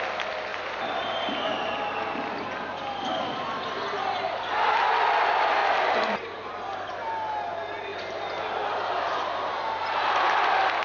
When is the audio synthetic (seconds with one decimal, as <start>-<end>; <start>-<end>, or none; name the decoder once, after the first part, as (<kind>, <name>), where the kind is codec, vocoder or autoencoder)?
0.5-1.5 (vocoder, BigVGAN v2); 5.6-6.9